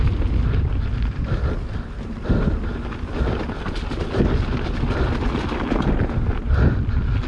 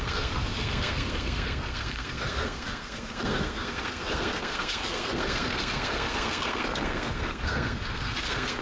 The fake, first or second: second